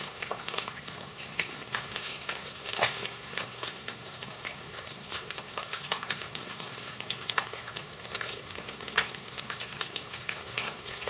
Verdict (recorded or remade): remade